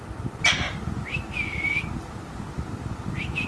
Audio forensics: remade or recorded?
recorded